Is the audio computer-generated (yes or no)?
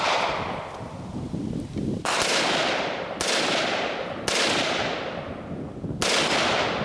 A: no